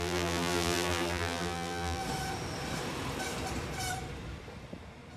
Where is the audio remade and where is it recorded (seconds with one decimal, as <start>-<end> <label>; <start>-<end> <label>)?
0.0-2.0 remade; 2.0-5.2 recorded